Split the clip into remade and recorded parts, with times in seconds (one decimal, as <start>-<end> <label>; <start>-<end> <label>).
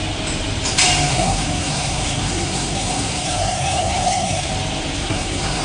0.0-1.1 recorded; 1.1-4.5 remade; 4.5-5.0 recorded; 5.0-5.6 remade